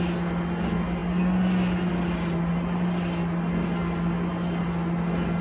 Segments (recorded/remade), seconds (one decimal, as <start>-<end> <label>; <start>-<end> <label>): 0.0-5.4 recorded